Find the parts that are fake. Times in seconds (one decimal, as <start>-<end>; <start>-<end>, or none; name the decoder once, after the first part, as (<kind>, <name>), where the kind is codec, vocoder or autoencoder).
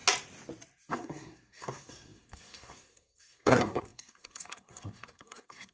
0.9-5.7 (codec, SNAC)